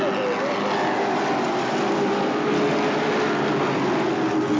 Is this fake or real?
real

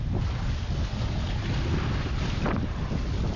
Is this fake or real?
real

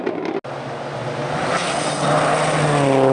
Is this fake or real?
real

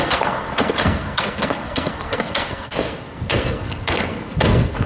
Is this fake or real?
fake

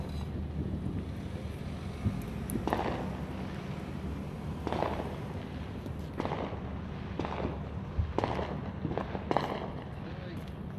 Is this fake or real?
real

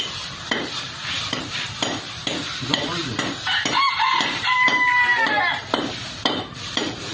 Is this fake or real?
fake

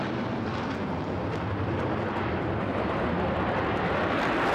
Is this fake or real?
real